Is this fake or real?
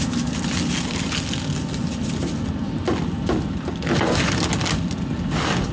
real